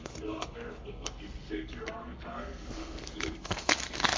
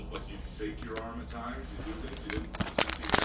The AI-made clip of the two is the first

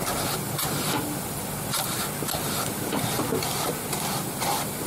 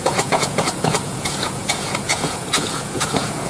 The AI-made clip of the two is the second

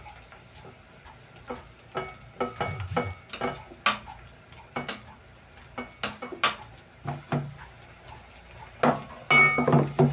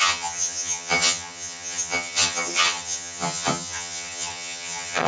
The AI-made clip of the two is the second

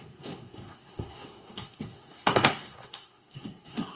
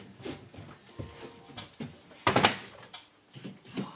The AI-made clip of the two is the first